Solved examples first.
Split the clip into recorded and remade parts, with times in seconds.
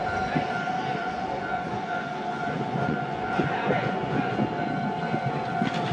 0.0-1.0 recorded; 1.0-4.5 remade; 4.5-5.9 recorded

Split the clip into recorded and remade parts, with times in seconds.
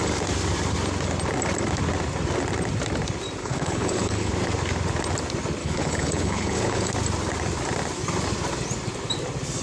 0.0-3.4 recorded; 3.4-4.3 remade; 4.3-5.6 recorded; 5.6-6.9 remade; 6.9-9.6 recorded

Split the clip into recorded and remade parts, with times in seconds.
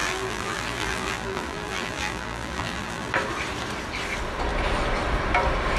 0.0-3.1 remade; 3.1-5.8 recorded